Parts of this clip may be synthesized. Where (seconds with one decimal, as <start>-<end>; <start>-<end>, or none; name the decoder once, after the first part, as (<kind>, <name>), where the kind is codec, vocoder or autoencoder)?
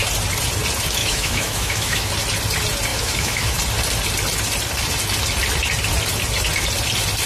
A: 1.0-2.1 (autoencoder, DAC-VAE); 2.9-3.6